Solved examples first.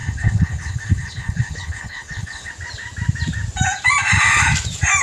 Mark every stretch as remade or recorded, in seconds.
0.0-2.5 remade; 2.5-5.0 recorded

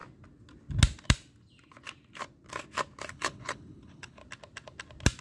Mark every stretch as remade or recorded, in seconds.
0.0-3.1 recorded; 3.1-4.2 remade; 4.2-5.2 recorded

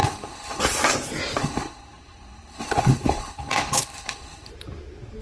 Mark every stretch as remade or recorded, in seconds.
0.0-0.6 remade; 0.6-1.4 recorded; 1.4-4.5 remade; 4.5-5.2 recorded

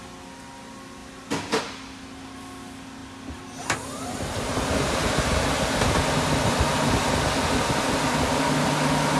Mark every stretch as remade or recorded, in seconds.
0.0-9.2 recorded

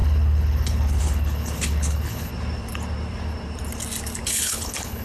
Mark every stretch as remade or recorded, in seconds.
0.0-2.3 remade; 2.3-4.3 recorded; 4.3-5.0 remade

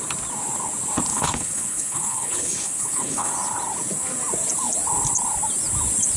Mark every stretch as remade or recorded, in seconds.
0.0-1.1 recorded; 1.1-3.3 remade; 3.3-6.2 recorded